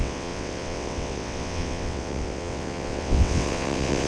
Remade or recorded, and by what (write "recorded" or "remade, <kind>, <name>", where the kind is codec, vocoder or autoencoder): remade, vocoder, WaveNeXt